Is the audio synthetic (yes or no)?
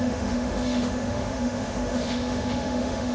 yes